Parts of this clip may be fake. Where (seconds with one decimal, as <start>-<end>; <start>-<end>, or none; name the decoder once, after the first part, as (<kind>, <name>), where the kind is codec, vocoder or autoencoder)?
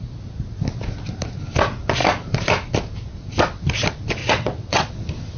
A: 4.2-4.9 (vocoder, WaveNeXt)